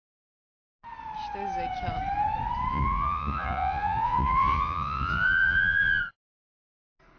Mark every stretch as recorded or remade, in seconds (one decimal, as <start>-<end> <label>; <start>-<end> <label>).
0.0-2.7 recorded; 2.7-6.0 remade; 6.0-7.2 recorded